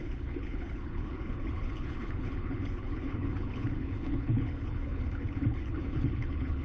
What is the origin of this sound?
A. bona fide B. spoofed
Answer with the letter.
B